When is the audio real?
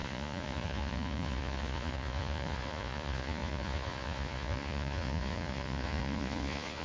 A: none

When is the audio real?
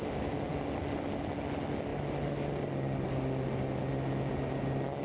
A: 0.0-5.0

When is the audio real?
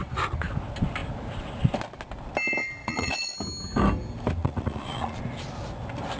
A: 0.0-2.8; 3.3-4.4; 5.2-6.2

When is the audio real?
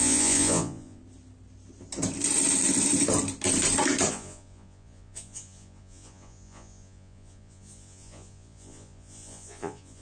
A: 1.0-4.1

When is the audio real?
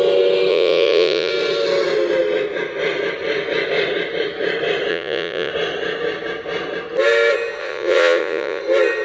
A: 0.0-0.5; 1.3-4.9; 5.5-7.6; 8.6-9.0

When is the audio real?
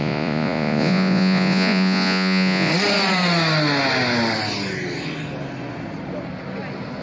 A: 2.7-7.0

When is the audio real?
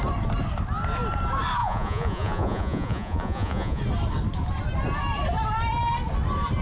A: 0.0-1.6; 3.8-6.6